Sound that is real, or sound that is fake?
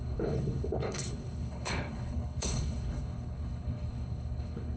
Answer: fake